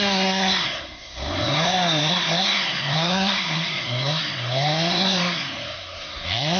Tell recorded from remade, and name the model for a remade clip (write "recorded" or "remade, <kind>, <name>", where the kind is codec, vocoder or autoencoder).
remade, codec, SNAC